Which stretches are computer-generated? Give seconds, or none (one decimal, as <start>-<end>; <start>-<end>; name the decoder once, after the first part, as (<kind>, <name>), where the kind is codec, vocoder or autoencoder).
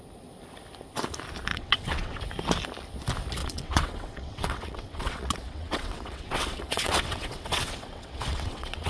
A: 1.5-2.2 (vocoder, WaveNeXt); 3.4-8.9